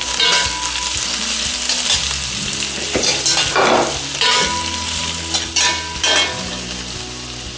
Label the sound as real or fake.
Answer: real